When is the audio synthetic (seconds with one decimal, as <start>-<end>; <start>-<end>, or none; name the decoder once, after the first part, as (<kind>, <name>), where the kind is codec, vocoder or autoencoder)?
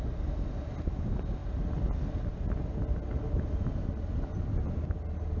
none